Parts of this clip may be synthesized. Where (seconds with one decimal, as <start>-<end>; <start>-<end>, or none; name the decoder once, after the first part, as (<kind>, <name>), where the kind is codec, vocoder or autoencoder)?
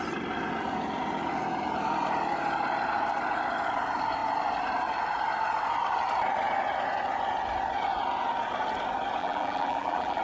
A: 9.2-10.2 (vocoder, BigVGAN v2)